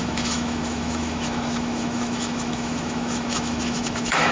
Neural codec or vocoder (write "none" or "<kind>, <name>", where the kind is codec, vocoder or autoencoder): autoencoder, DAC-VAE